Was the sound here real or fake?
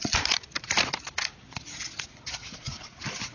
real